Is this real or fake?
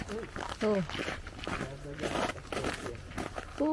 real